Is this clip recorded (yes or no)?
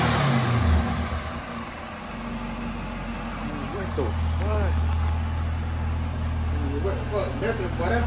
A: yes